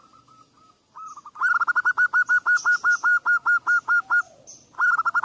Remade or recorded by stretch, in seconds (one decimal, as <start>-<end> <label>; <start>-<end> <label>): 0.0-5.2 recorded

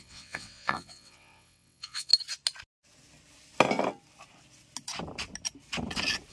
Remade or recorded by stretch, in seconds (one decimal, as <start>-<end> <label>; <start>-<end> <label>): 0.0-2.1 remade; 2.1-6.3 recorded

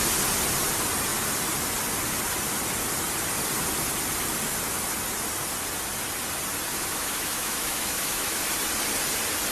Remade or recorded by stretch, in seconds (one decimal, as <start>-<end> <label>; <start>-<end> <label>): 0.0-6.7 recorded; 6.7-8.4 remade; 8.4-9.5 recorded

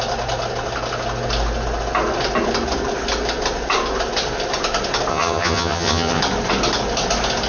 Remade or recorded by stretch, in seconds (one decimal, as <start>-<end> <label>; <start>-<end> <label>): 0.0-5.1 recorded; 5.1-6.2 remade; 6.2-7.5 recorded